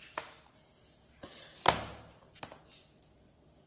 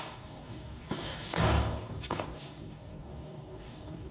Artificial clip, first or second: second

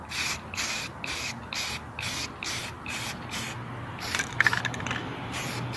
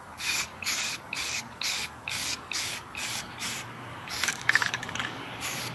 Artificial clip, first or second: second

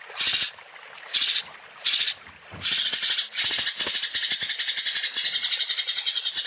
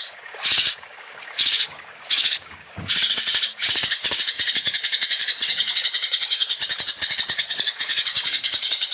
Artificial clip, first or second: second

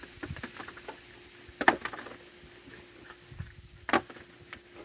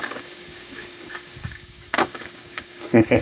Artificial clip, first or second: second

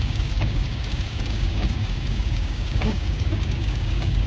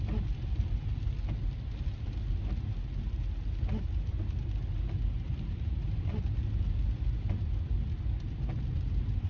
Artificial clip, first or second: first